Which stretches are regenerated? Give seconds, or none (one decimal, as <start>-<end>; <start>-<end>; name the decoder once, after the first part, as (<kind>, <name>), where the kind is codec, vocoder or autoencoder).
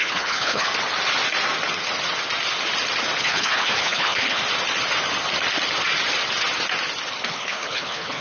0.0-0.7 (codec, HILCodec); 3.2-4.4; 7.3-8.2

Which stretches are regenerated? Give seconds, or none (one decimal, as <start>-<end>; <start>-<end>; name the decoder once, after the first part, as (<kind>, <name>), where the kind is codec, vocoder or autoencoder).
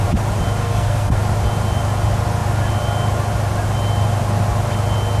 0.6-1.2 (codec, SNAC)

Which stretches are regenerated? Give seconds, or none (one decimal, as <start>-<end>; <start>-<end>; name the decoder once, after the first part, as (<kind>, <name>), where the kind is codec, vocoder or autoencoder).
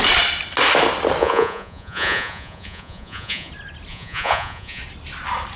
1.2-3.5 (vocoder, Vocos); 3.9-4.8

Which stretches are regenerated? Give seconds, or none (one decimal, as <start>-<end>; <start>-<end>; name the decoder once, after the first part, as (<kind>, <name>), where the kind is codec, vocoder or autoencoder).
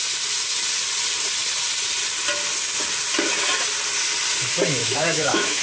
4.8-5.6 (autoencoder, DAC-VAE)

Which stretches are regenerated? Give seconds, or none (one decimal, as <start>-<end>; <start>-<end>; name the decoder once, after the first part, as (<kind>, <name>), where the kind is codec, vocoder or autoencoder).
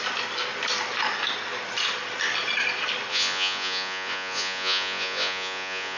3.1-6.0 (vocoder, Vocos)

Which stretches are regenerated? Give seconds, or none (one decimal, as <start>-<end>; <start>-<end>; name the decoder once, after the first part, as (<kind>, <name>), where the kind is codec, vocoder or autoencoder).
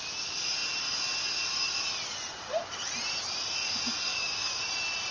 4.1-4.6 (codec, DAC)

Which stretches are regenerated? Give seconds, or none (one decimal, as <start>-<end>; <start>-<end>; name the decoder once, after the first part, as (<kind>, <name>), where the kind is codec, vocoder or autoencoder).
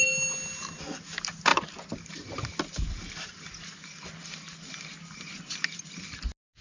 none